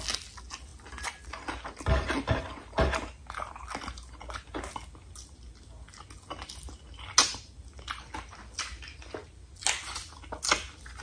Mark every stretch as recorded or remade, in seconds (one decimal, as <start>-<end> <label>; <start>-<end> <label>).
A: 0.0-11.0 recorded